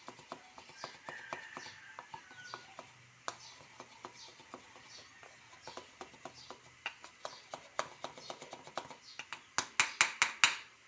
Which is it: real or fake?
real